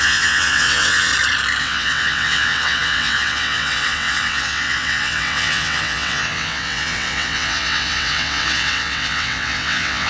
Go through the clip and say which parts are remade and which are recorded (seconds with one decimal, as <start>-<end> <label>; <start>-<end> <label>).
0.0-1.1 remade; 1.1-1.6 recorded; 1.6-10.1 remade